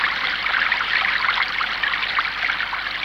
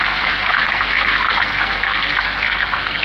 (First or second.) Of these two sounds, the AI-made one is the second